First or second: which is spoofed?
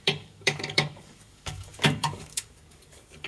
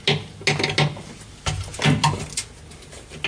first